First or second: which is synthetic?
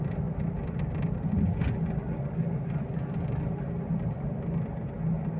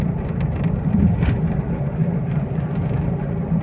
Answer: second